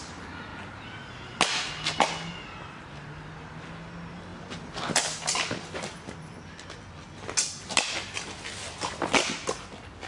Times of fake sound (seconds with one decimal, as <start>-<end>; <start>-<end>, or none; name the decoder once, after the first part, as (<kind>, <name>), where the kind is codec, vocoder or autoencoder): none